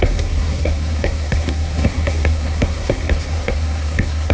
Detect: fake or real fake